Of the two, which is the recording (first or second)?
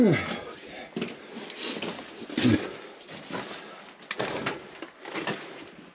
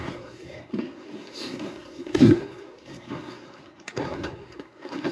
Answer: first